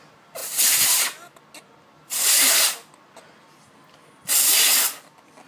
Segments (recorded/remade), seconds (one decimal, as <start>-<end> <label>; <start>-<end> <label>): 0.0-5.5 recorded